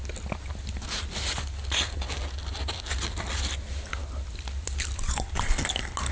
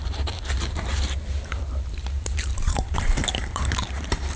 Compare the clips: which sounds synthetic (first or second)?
second